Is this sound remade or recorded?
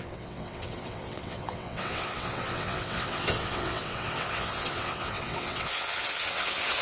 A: remade